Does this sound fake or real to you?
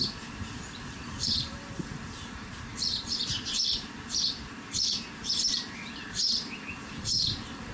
fake